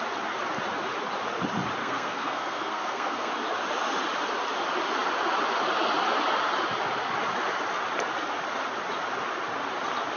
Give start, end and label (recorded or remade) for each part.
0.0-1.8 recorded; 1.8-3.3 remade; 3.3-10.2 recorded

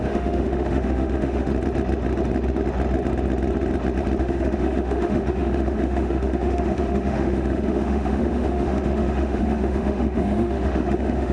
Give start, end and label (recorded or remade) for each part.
0.0-1.5 remade; 1.5-4.2 recorded; 4.2-11.3 remade